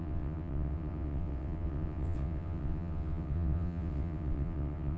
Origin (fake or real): fake